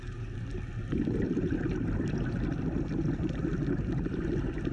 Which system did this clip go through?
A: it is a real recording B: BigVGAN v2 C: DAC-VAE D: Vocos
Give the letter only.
A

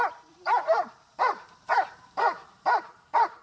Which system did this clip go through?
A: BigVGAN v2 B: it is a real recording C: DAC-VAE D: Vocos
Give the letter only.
A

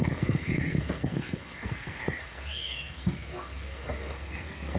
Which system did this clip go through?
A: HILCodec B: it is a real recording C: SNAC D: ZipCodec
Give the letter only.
C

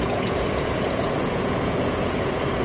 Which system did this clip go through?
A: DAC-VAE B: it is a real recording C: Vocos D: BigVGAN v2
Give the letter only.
C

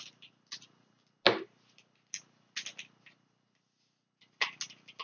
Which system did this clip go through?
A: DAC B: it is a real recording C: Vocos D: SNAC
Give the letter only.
B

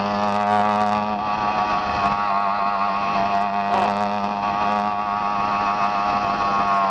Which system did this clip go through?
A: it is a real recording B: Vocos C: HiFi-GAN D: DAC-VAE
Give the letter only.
A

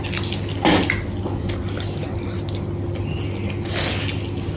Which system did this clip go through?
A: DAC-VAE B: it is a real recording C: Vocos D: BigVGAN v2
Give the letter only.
B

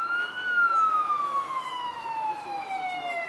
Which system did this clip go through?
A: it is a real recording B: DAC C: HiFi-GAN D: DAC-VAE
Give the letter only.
D